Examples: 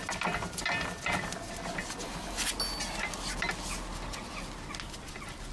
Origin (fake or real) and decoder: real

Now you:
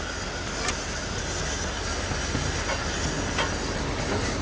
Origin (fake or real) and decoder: real